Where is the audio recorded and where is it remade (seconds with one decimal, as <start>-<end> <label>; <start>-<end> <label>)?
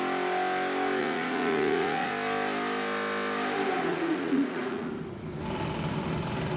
0.0-1.0 recorded; 1.0-2.1 remade; 2.1-3.9 recorded; 3.9-4.9 remade; 4.9-6.6 recorded